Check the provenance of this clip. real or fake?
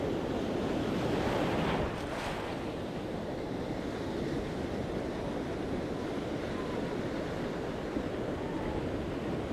real